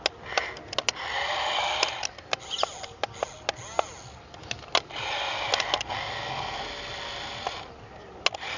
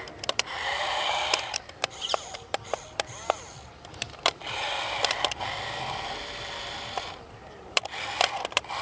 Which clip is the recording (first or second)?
first